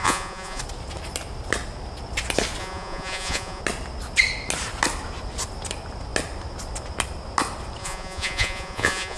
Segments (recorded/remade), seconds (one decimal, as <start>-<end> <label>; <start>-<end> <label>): 0.0-0.6 remade; 0.6-2.6 recorded; 2.6-3.6 remade; 3.6-7.8 recorded; 7.8-9.2 remade